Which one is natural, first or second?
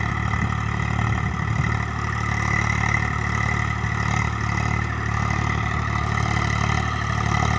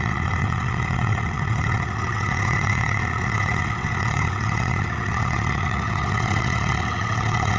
first